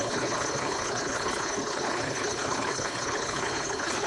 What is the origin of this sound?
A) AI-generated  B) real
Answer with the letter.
A